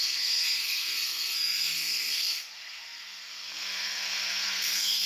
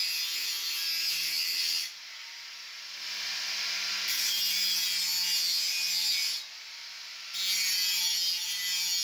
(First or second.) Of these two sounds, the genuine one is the second